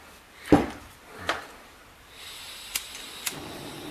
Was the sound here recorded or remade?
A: recorded